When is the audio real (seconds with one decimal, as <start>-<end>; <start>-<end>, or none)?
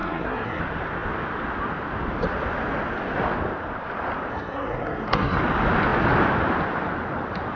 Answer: 0.6-4.3; 5.4-7.6